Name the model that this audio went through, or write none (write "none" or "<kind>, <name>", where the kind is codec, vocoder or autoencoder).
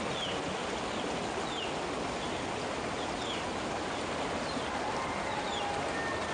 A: none